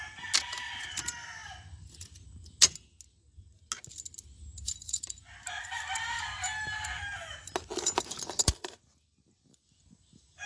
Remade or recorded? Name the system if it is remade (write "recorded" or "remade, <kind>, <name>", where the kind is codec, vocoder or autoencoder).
recorded